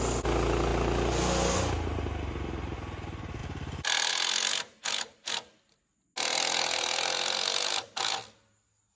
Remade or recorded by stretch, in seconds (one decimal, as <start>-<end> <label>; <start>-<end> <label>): 0.0-3.4 recorded; 3.4-4.1 remade; 4.1-9.0 recorded